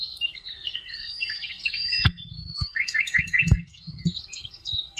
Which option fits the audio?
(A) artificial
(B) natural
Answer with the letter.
A